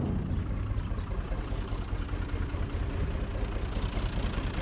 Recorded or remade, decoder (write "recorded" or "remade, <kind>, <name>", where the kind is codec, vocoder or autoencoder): recorded